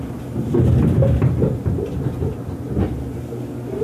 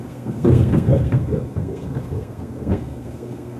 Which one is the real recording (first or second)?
first